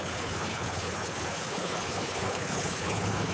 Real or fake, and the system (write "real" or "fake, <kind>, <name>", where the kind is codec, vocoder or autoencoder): fake, codec, HILCodec